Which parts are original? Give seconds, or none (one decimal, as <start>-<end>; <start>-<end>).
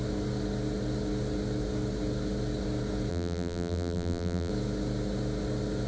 0.0-3.1; 4.5-5.9